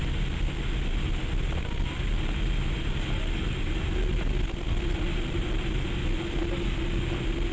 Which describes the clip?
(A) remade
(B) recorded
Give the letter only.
B